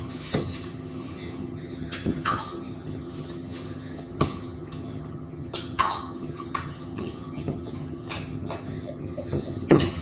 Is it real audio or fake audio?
fake